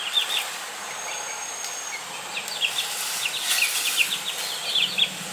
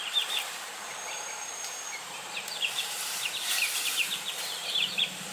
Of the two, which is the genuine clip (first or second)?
first